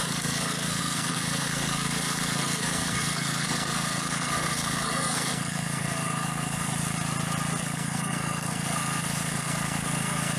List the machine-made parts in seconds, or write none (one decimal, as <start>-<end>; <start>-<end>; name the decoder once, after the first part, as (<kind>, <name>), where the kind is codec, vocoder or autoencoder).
0.0-6.7 (codec, SNAC); 7.6-10.4